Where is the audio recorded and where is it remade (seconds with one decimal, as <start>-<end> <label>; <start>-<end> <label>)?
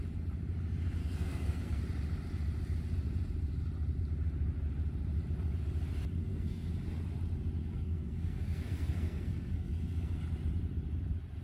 0.0-1.0 recorded; 1.0-1.8 remade; 1.8-6.2 recorded; 6.2-6.7 remade; 6.7-7.6 recorded; 7.6-10.2 remade; 10.2-11.4 recorded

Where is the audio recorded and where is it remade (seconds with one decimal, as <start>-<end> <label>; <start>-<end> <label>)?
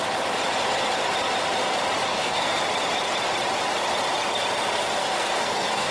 0.0-2.1 recorded; 2.1-2.6 remade; 2.6-4.7 recorded; 4.7-5.9 remade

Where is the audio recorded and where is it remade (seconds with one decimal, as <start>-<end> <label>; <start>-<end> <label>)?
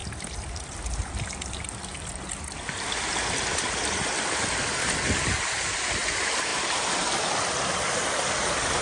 0.0-8.8 recorded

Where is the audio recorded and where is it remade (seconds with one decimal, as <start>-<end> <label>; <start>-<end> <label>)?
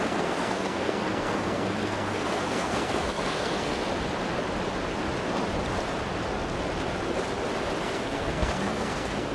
0.0-3.8 remade; 3.8-7.8 recorded; 7.8-9.3 remade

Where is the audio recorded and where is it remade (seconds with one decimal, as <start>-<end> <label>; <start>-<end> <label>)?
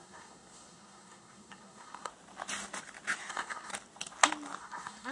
0.0-2.1 remade; 2.1-3.3 recorded; 3.3-3.7 remade; 3.7-4.6 recorded; 4.6-5.1 remade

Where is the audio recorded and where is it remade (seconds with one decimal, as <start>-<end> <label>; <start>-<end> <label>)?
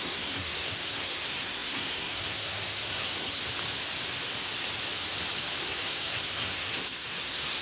0.0-3.4 remade; 3.4-5.6 recorded; 5.6-7.6 remade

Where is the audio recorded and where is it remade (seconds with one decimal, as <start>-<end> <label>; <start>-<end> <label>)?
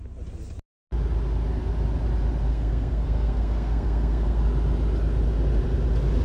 0.0-2.5 recorded; 2.5-4.4 remade; 4.4-6.2 recorded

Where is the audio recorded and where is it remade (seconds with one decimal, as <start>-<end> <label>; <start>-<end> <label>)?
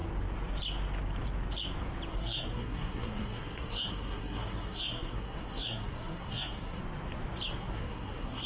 0.0-2.1 recorded; 2.1-6.8 remade; 6.8-7.6 recorded; 7.6-8.5 remade